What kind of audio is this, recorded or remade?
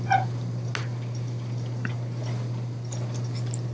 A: recorded